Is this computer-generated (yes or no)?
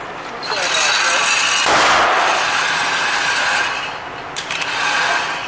no